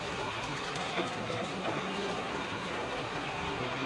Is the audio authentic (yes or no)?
no